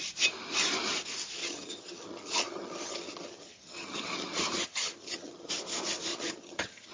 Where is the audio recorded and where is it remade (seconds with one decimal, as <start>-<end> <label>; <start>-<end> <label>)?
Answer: 0.0-1.4 recorded; 1.4-5.5 remade; 5.5-6.1 recorded; 6.1-6.9 remade